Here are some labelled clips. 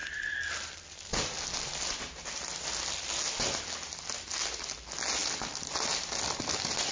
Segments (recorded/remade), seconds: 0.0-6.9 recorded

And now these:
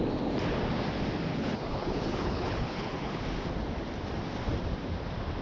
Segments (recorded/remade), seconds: 0.0-1.3 recorded; 1.3-3.2 remade; 3.2-5.4 recorded

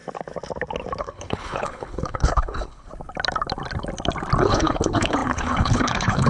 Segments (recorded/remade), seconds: 0.0-1.0 recorded; 1.0-2.9 remade; 2.9-4.4 recorded; 4.4-6.3 remade

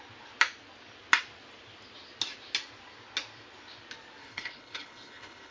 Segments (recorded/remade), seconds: 0.0-4.2 recorded; 4.2-5.5 remade

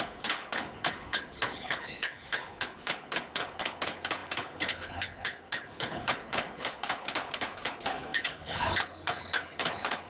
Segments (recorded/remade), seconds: 0.0-10.1 remade